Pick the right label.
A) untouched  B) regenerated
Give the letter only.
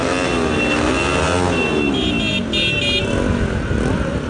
A